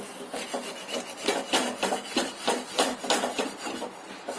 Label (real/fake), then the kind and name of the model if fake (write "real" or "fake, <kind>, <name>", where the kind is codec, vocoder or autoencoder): real